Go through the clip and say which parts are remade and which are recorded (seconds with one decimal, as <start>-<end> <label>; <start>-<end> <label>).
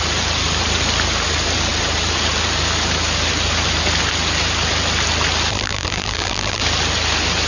0.0-5.5 recorded; 5.5-6.6 remade; 6.6-7.5 recorded